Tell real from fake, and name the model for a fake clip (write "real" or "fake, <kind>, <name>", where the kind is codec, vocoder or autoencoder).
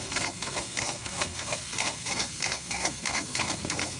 fake, codec, SNAC